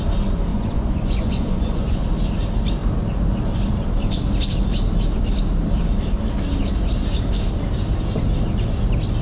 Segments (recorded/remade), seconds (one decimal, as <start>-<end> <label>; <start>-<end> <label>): 0.0-0.5 recorded; 0.5-2.0 remade; 2.0-9.2 recorded